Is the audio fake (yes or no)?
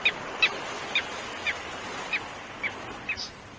no